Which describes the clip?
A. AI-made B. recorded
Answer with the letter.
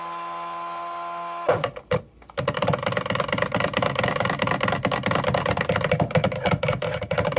B